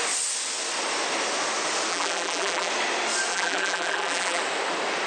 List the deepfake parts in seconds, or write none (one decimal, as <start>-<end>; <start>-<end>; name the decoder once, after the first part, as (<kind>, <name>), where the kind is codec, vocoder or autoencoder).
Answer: 1.9-2.7 (vocoder, BigVGAN v2); 3.3-4.4